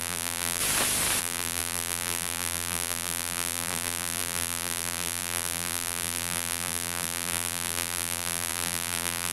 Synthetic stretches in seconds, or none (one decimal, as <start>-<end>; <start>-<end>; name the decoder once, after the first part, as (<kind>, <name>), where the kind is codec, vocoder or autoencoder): 0.0-0.6 (vocoder, BigVGAN v2); 1.2-9.3